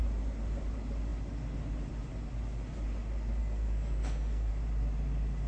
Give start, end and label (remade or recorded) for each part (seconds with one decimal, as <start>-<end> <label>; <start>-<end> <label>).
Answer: 0.0-3.4 recorded; 3.4-4.5 remade; 4.5-5.5 recorded